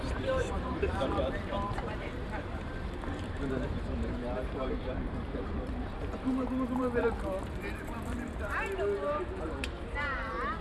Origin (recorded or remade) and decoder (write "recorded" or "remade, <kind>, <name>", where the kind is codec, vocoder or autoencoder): remade, vocoder, BigVGAN v2